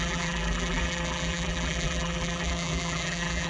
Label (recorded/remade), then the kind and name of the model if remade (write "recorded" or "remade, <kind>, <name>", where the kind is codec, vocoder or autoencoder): remade, vocoder, BigVGAN v2